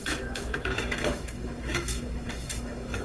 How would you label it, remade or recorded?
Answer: remade